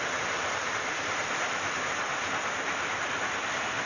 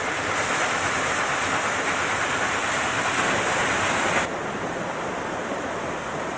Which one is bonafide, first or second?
second